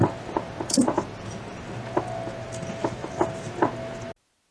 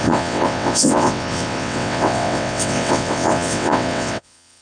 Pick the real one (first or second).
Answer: first